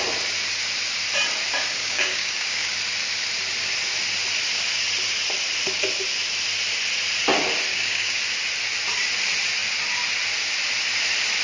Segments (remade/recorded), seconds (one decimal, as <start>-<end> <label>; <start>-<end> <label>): 0.0-1.8 recorded; 1.8-2.7 remade; 2.7-7.7 recorded; 7.7-8.2 remade; 8.2-11.4 recorded

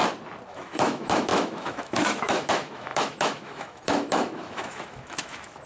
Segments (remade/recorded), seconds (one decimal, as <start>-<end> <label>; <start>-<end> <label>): 0.0-0.5 recorded; 0.5-5.7 remade

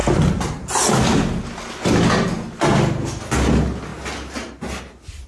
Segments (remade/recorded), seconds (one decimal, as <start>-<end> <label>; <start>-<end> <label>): 0.0-5.3 recorded

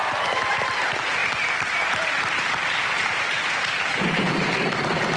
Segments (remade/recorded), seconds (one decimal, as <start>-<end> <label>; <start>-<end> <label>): 0.0-5.2 remade

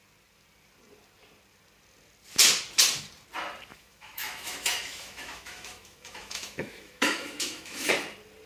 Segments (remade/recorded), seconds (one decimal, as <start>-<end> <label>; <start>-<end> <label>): 0.0-3.7 recorded; 3.7-7.9 remade; 7.9-8.5 recorded

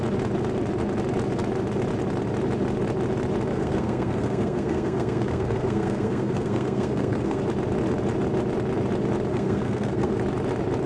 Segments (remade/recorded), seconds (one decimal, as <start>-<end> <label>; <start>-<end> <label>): 0.0-3.5 recorded; 3.5-7.4 remade; 7.4-9.3 recorded; 9.3-10.2 remade; 10.2-10.9 recorded

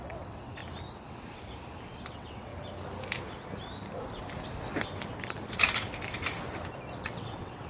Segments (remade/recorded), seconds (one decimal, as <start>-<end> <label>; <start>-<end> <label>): 0.0-0.6 remade; 0.6-2.1 recorded; 2.1-2.5 remade; 2.5-7.0 recorded; 7.0-7.7 remade